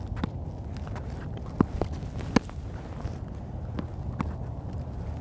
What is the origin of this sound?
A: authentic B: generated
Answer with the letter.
A